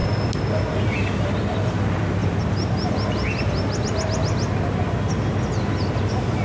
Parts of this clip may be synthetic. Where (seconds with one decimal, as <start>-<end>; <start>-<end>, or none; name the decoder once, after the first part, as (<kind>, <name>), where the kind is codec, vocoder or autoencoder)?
none